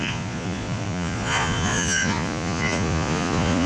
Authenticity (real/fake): fake